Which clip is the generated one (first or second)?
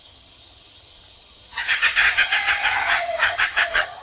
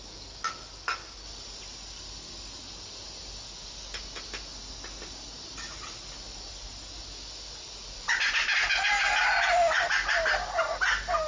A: first